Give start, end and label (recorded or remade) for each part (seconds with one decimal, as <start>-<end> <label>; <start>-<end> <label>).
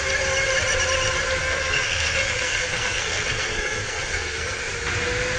0.0-1.4 recorded; 1.4-4.6 remade; 4.6-5.4 recorded